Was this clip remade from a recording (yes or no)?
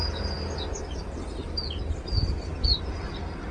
no